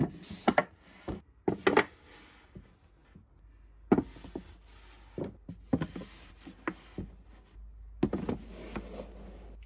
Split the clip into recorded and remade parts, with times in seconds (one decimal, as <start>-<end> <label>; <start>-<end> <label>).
0.0-9.7 recorded